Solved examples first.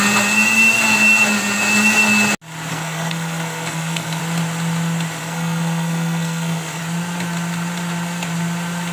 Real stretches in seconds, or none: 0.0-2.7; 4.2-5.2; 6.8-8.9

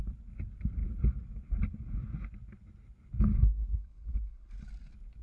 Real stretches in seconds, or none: 0.0-3.3; 4.5-5.2

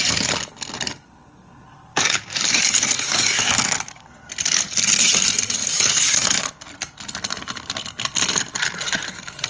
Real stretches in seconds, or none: 0.0-1.9; 4.0-5.6; 6.5-9.5

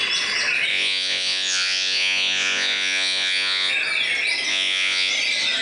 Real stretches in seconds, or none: 0.0-0.7; 3.7-4.5; 5.1-5.6

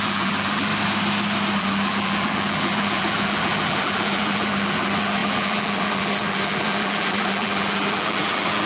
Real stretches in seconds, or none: 0.7-1.6

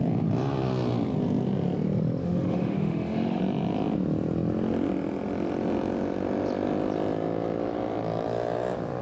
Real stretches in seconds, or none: 0.0-2.2; 3.4-9.0

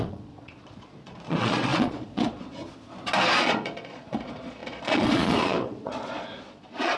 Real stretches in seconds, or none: 2.6-3.4

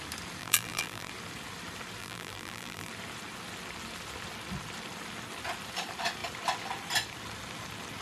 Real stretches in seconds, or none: 0.0-0.4; 1.1-2.0; 2.9-8.0